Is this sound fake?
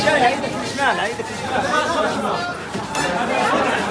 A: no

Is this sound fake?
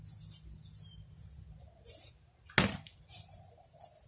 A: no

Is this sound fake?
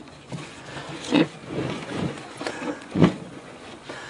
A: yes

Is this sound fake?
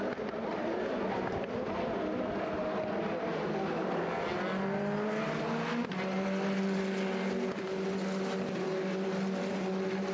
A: no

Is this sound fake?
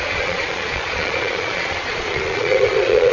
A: yes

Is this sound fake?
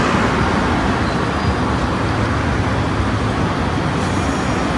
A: no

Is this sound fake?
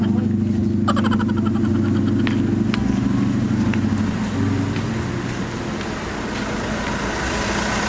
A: no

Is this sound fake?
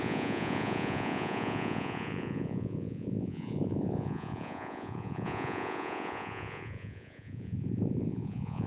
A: yes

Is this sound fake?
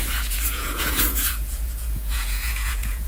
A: yes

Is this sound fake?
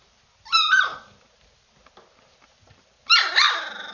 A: no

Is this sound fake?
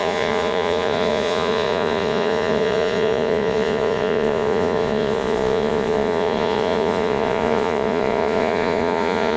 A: yes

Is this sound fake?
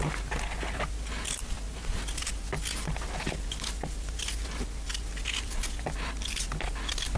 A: no